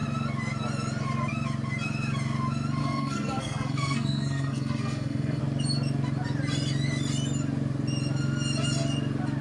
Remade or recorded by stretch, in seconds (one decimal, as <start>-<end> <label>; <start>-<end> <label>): 0.0-2.8 recorded; 2.8-5.4 remade; 5.4-9.4 recorded